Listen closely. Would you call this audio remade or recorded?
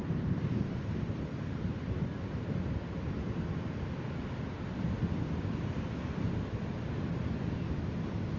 recorded